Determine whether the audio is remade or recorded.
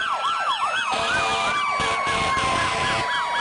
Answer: recorded